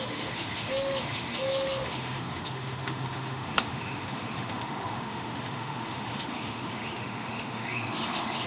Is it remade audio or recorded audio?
remade